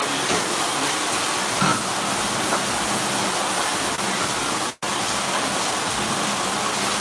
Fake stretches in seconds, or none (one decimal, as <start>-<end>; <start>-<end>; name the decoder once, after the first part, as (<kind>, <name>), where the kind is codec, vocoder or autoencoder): none